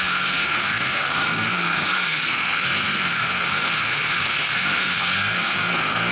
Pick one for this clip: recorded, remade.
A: remade